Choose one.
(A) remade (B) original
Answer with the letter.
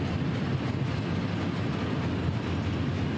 B